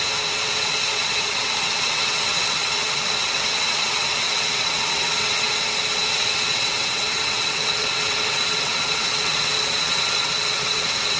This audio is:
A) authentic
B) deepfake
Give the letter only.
B